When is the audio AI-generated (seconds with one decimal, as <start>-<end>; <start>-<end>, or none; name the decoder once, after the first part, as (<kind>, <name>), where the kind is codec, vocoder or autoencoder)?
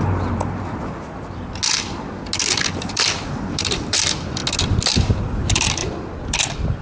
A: 0.0-1.6 (vocoder, BigVGAN v2); 2.7-4.4; 5.2-6.8